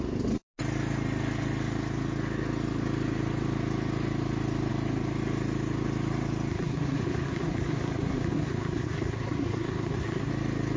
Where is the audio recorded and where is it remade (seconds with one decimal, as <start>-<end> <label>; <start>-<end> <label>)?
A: 0.0-6.5 recorded; 6.5-10.3 remade; 10.3-10.8 recorded